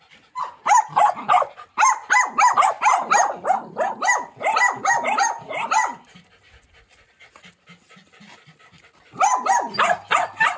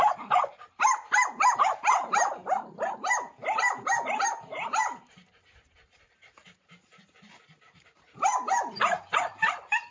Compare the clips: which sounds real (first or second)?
first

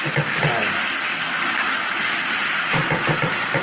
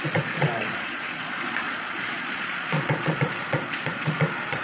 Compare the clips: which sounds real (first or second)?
first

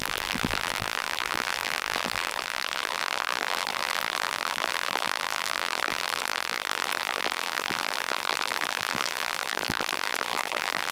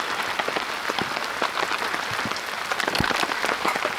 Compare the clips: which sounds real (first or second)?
second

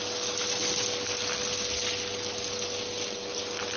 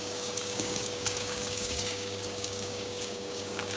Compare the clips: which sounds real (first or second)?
first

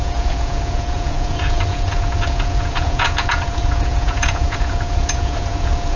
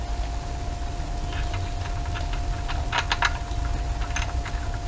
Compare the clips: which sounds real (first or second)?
second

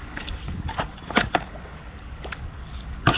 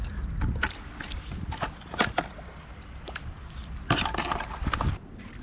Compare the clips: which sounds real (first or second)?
second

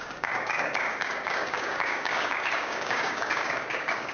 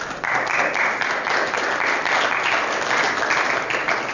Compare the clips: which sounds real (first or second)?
second